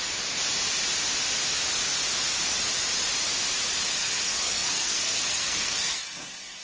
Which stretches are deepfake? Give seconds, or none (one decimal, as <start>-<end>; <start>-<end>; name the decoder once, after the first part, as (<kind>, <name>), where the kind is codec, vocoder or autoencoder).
4.0-6.6 (codec, SNAC)

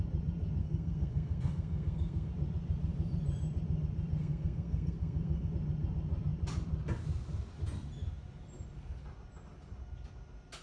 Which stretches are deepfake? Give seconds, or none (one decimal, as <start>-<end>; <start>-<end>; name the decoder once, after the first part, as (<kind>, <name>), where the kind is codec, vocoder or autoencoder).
0.6-2.3 (codec, SNAC); 4.2-5.5